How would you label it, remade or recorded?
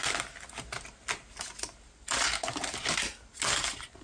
recorded